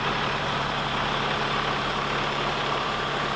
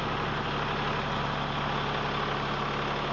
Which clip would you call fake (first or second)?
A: first